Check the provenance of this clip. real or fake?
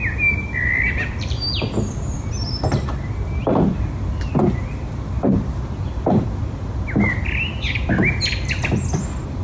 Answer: real